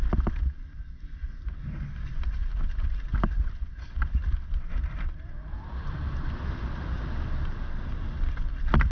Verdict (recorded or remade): recorded